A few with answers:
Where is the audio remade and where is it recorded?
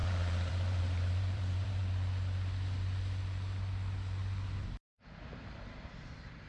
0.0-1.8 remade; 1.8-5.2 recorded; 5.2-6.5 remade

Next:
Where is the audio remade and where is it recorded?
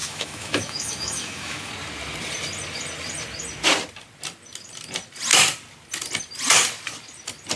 0.0-1.7 remade; 1.7-7.6 recorded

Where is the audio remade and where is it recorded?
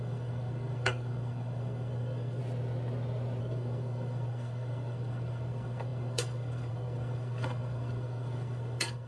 0.0-2.4 remade; 2.4-3.4 recorded; 3.4-9.1 remade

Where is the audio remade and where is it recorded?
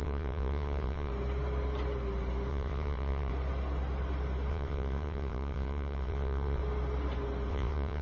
0.0-1.1 remade; 1.1-2.5 recorded; 2.5-3.3 remade; 3.3-4.5 recorded; 4.5-6.6 remade; 6.6-7.5 recorded; 7.5-8.0 remade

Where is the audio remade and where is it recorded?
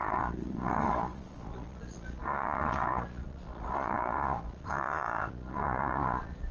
0.0-6.5 remade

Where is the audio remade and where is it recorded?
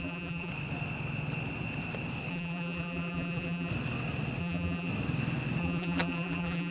0.0-0.5 remade; 0.5-2.3 recorded; 2.3-3.7 remade; 3.7-4.4 recorded; 4.4-4.9 remade; 4.9-5.6 recorded; 5.6-6.7 remade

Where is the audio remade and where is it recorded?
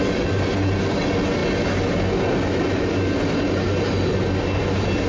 0.0-5.1 recorded